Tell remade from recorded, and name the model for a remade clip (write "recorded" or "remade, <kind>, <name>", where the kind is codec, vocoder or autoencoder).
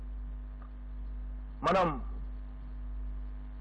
recorded